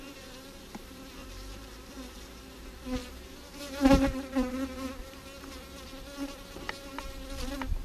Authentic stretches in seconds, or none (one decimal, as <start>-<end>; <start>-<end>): 3.0-7.8